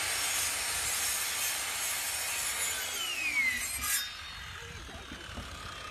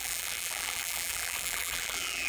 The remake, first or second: second